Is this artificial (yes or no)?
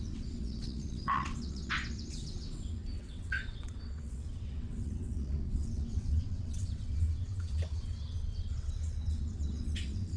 yes